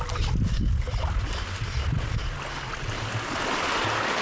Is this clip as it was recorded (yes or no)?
yes